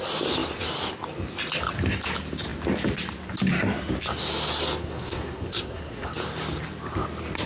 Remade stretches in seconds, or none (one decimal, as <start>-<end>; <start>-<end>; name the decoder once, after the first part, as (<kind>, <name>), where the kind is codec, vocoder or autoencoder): 4.8-6.1 (codec, SNAC)